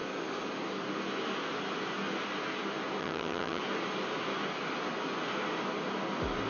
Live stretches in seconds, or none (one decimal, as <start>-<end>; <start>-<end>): 0.0-3.0; 3.6-6.5